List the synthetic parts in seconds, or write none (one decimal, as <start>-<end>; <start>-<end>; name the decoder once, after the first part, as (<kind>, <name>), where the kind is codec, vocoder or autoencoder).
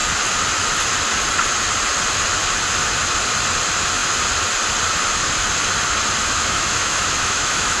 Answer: 6.2-7.8 (autoencoder, DAC-VAE)